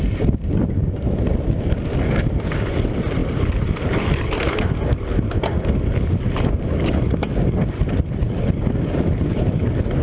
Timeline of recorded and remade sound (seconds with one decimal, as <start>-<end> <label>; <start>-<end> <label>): 0.0-10.0 recorded